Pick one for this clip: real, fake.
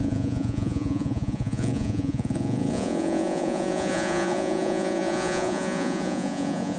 fake